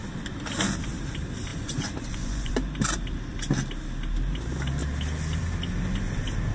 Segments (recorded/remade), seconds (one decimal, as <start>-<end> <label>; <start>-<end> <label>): 0.0-1.5 recorded; 1.5-2.5 remade; 2.5-6.5 recorded

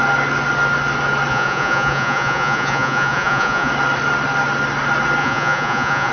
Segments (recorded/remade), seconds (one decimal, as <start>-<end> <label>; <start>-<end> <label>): 0.0-1.3 recorded; 1.3-3.7 remade; 3.7-5.2 recorded; 5.2-6.1 remade

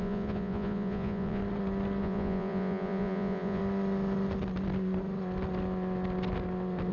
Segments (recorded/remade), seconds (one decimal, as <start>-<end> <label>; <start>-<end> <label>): 0.0-1.4 remade; 1.4-2.0 recorded; 2.0-3.6 remade; 3.6-6.9 recorded

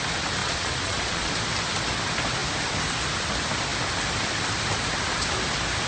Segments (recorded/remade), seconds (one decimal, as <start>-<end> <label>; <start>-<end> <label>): 0.0-0.4 recorded; 0.4-1.3 remade; 1.3-5.9 recorded

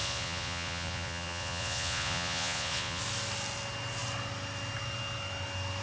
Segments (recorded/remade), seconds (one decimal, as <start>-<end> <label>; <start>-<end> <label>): 0.0-3.0 remade; 3.0-5.8 recorded